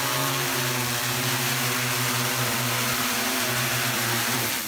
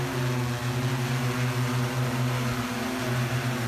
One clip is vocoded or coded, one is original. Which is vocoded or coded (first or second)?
first